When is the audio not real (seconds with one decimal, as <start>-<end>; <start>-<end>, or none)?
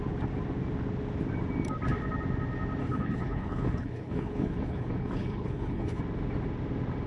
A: 2.8-6.0